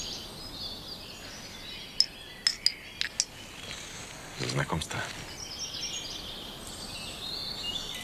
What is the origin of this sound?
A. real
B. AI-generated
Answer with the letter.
A